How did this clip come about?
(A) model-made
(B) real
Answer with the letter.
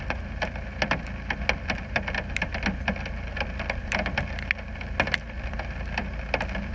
B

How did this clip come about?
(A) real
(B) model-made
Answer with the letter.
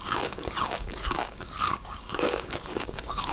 B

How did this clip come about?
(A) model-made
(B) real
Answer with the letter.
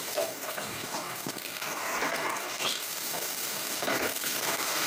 A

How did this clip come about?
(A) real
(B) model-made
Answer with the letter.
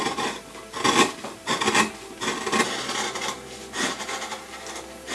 A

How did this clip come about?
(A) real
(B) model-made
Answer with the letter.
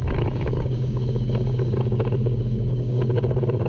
B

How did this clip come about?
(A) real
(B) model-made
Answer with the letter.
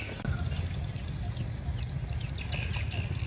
A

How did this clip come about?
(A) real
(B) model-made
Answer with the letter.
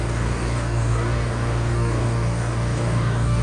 B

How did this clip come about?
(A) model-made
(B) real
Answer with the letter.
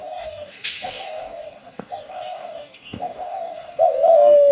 A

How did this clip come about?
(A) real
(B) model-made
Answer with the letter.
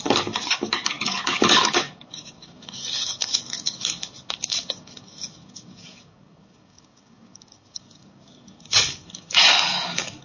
B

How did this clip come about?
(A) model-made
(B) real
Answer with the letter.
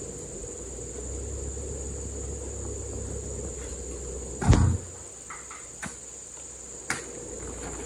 B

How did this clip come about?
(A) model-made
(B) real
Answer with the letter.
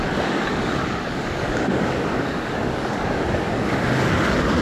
A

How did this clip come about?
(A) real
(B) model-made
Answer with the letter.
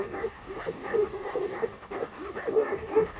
B